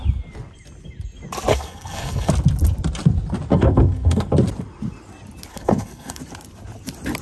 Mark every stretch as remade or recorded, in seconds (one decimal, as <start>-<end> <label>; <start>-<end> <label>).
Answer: 0.0-1.5 recorded; 1.5-2.3 remade; 2.3-3.5 recorded; 3.5-4.3 remade; 4.3-5.5 recorded; 5.5-6.2 remade; 6.2-7.2 recorded

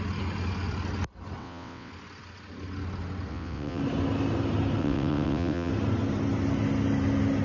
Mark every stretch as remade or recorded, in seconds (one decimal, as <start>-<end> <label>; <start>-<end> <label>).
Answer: 0.0-1.4 recorded; 1.4-1.9 remade; 1.9-3.3 recorded; 3.3-3.8 remade; 3.8-4.8 recorded; 4.8-5.7 remade; 5.7-7.4 recorded

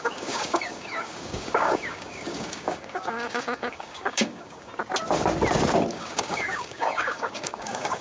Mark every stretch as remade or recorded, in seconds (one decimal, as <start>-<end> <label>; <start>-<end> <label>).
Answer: 0.0-4.7 remade; 4.7-5.9 recorded; 5.9-8.0 remade

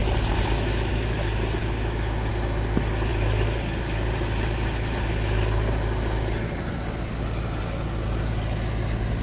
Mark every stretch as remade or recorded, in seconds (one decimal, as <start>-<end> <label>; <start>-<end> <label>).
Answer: 0.0-1.6 recorded; 1.6-2.3 remade; 2.3-9.2 recorded

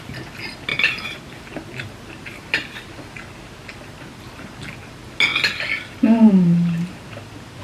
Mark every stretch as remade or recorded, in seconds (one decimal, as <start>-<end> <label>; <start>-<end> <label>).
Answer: 0.0-7.6 recorded

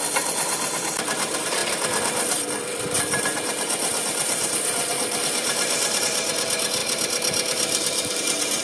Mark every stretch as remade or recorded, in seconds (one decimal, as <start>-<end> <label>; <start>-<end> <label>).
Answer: 0.0-8.6 remade